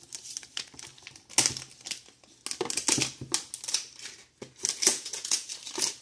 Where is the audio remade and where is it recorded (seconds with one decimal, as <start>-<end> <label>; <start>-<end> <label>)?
0.0-4.9 recorded; 4.9-5.5 remade; 5.5-6.0 recorded